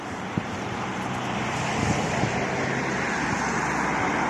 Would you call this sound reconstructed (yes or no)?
no